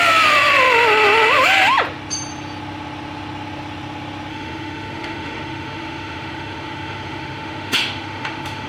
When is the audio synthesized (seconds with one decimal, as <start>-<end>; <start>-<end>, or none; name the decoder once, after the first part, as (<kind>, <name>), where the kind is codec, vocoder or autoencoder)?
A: 4.3-8.7 (autoencoder, DAC-VAE)